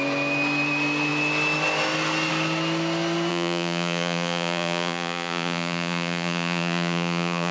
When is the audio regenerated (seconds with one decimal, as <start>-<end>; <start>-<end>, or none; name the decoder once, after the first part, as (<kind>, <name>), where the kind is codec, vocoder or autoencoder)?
3.3-7.5 (vocoder, Vocos)